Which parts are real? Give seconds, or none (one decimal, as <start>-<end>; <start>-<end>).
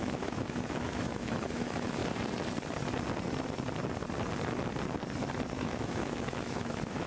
2.0-5.6